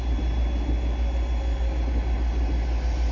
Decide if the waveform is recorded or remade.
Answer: recorded